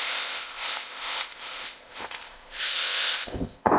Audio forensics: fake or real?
fake